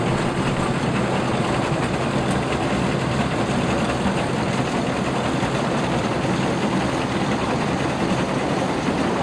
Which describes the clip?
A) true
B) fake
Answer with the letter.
B